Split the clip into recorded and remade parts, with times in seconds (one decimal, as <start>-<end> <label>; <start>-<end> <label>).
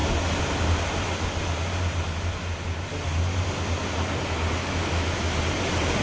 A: 0.0-4.6 recorded; 4.6-5.4 remade; 5.4-6.0 recorded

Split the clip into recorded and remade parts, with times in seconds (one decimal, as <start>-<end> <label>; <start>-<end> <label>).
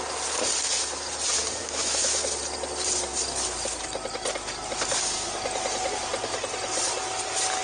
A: 0.0-1.6 recorded; 1.6-2.4 remade; 2.4-7.6 recorded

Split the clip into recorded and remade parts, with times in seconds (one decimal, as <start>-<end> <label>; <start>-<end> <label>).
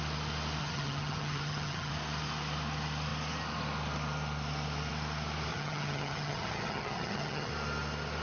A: 0.0-0.6 recorded; 0.6-1.9 remade; 1.9-5.5 recorded; 5.5-7.5 remade; 7.5-8.2 recorded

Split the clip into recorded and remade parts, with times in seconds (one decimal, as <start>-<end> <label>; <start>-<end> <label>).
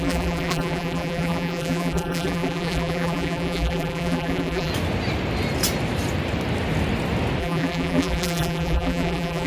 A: 0.0-4.7 remade; 4.7-7.4 recorded; 7.4-9.5 remade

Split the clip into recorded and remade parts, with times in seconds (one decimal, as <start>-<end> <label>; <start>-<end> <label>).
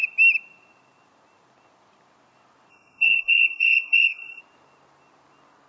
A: 0.0-2.7 recorded; 2.7-4.4 remade; 4.4-5.7 recorded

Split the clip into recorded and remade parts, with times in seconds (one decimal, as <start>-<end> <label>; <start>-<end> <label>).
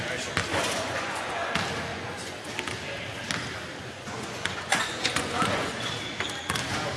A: 0.0-0.5 recorded; 0.5-1.5 remade; 1.5-1.9 recorded; 1.9-2.5 remade; 2.5-3.8 recorded; 3.8-5.9 remade; 5.9-7.0 recorded